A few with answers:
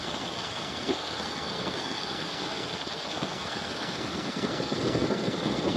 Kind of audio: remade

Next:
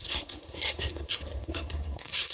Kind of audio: remade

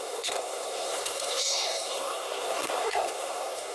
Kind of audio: remade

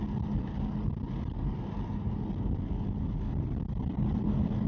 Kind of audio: recorded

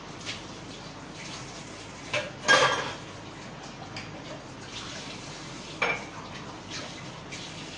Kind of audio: recorded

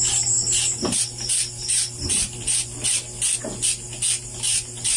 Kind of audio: recorded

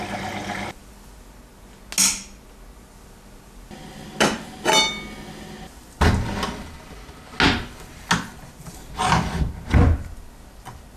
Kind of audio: recorded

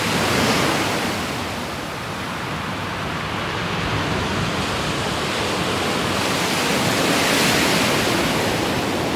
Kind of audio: recorded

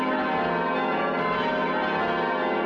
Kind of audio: recorded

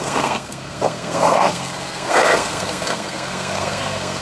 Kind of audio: remade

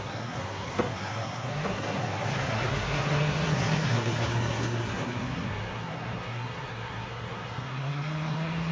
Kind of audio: remade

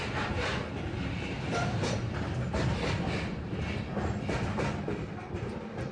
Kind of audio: recorded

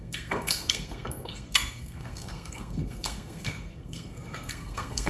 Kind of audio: remade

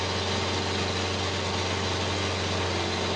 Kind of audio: recorded